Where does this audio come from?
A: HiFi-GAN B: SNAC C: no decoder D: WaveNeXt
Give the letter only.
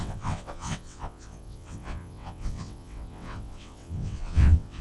D